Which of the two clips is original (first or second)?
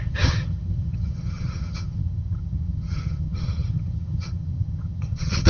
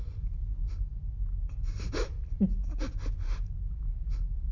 second